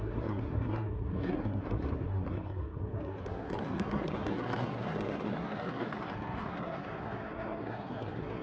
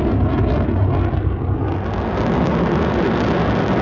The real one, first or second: second